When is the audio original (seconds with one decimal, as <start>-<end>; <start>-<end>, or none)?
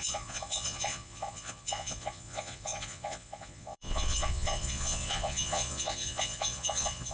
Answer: none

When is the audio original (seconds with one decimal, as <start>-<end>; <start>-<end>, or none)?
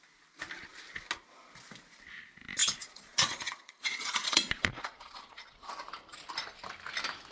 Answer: 0.0-2.6; 5.7-7.3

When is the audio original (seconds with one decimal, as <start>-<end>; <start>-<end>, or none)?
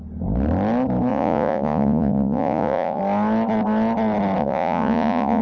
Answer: 0.0-1.1; 3.0-4.4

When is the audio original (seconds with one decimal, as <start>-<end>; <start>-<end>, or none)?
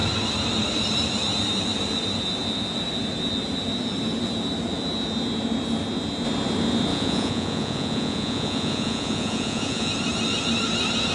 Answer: 0.0-6.9; 9.9-11.1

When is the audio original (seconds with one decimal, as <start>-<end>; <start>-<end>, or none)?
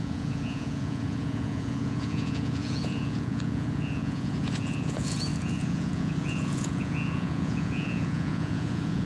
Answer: none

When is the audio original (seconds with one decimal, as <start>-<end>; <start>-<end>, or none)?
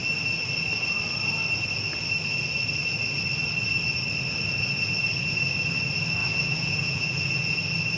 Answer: 0.0-6.2; 7.6-8.0